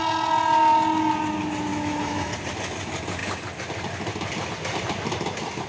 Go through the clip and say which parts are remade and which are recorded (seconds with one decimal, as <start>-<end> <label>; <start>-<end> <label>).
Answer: 0.0-1.7 recorded; 1.7-2.3 remade; 2.3-5.7 recorded